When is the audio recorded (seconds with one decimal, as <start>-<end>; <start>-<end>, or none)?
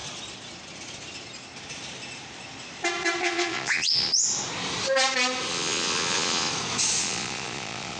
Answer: 0.0-3.2; 4.1-5.5; 6.5-7.0